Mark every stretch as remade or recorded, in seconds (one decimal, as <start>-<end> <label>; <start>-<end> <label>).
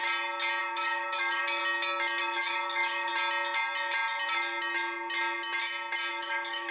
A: 0.0-0.6 recorded; 0.6-1.6 remade; 1.6-2.2 recorded; 2.2-3.1 remade; 3.1-6.1 recorded; 6.1-6.7 remade